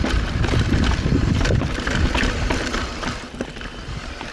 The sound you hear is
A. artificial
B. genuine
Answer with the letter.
B